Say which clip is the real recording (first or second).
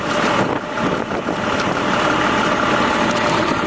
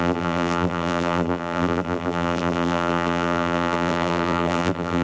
first